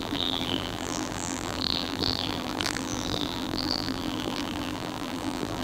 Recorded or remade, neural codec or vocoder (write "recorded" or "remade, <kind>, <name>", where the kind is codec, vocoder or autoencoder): remade, vocoder, BigVGAN v2